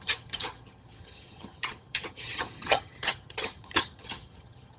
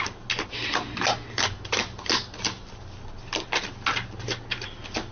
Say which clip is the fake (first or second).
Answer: first